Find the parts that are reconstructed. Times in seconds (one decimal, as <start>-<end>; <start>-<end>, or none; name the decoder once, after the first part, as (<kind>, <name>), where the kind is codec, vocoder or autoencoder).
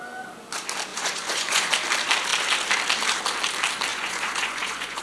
0.9-1.7 (vocoder, Vocos); 3.9-5.0